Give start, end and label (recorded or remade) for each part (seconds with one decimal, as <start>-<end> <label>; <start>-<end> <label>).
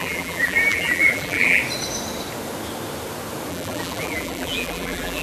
0.0-1.6 remade; 1.6-3.5 recorded; 3.5-5.2 remade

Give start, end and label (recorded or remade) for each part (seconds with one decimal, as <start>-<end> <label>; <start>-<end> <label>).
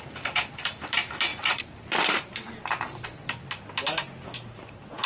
0.0-5.1 recorded